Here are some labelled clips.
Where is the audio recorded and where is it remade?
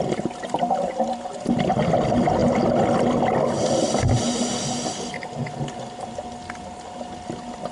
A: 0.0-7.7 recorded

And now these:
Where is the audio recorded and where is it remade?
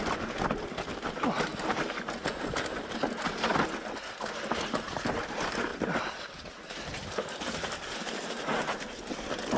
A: 0.0-1.5 recorded; 1.5-2.1 remade; 2.1-5.7 recorded; 5.7-8.0 remade; 8.0-8.5 recorded; 8.5-9.0 remade; 9.0-9.6 recorded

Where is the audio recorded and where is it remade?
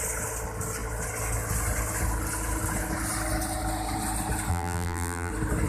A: 0.0-4.5 recorded; 4.5-5.3 remade; 5.3-5.7 recorded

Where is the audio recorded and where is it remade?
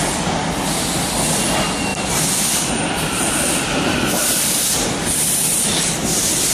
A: 0.0-1.9 recorded; 1.9-5.8 remade; 5.8-6.5 recorded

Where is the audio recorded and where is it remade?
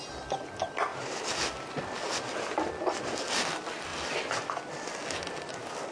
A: 0.0-5.9 recorded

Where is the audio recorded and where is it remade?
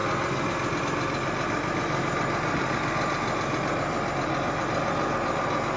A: 0.0-5.8 recorded